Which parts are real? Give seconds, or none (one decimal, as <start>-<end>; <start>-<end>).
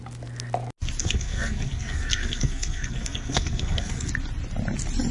0.0-1.0; 4.1-5.1